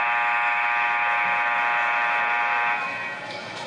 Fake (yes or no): yes